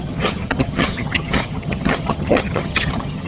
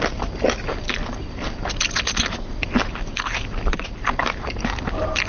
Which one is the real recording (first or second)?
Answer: second